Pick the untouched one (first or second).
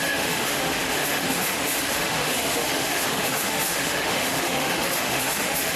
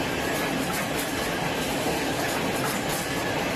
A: second